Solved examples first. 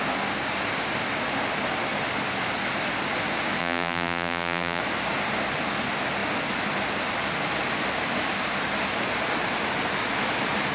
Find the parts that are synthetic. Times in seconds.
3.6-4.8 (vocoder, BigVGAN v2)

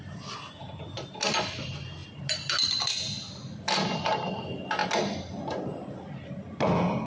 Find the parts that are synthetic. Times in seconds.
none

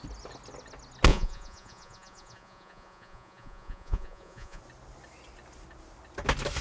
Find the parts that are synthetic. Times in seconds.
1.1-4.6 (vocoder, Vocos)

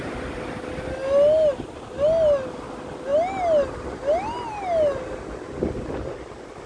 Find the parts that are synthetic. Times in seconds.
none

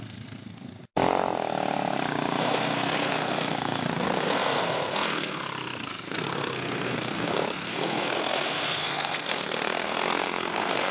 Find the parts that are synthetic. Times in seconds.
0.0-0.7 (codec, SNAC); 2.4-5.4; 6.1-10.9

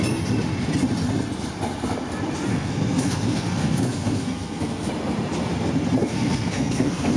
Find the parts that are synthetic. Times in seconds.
2.5-4.9 (codec, SNAC); 6.0-7.2

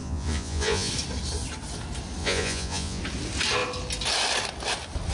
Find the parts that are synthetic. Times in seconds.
0.0-0.9 (vocoder, Vocos); 2.2-3.0

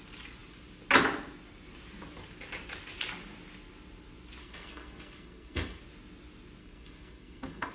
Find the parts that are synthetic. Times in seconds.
4.4-5.8 (codec, SNAC); 6.6-7.7